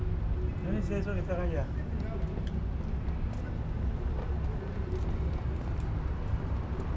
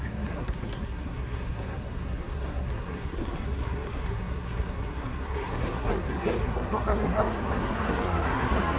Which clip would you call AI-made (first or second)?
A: second